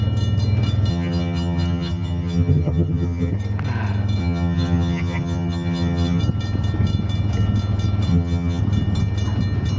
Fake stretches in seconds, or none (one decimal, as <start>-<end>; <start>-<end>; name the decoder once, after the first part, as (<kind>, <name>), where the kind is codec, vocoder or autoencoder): 0.9-3.3 (vocoder, HiFi-GAN); 4.2-6.2; 8.1-8.6